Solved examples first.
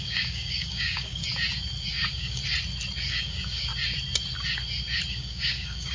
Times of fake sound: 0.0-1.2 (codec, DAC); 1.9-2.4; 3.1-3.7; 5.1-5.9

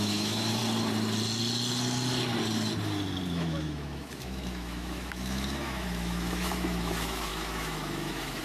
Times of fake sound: 0.0-0.6 (autoencoder, DAC-VAE); 3.3-8.4

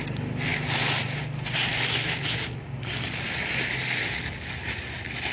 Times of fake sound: none